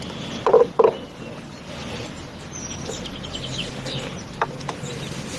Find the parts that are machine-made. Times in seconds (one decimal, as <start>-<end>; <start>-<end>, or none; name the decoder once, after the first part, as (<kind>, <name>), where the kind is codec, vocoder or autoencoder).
none